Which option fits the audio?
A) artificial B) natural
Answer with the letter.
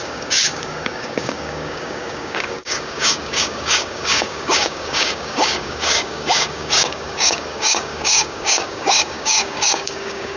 A